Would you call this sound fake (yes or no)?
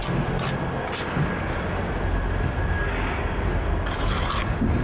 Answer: no